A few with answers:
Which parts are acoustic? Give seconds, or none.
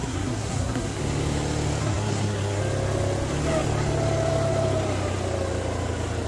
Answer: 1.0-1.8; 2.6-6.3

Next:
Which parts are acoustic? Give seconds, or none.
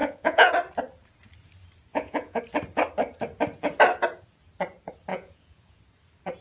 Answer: 0.5-1.9; 2.4-5.1; 5.8-6.4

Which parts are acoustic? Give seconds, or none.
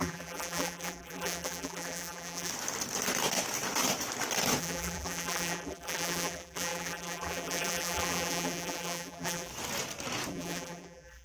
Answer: 2.5-4.6; 9.5-10.3